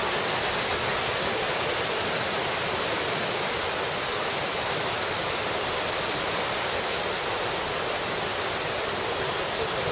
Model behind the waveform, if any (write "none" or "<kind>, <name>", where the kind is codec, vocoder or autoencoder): none